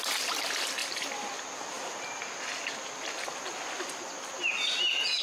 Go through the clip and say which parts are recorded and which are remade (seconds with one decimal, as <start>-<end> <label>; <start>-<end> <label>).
0.0-5.2 recorded